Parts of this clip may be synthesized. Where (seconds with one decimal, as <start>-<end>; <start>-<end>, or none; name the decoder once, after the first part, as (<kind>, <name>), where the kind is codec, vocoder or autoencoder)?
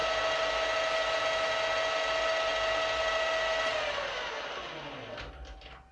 none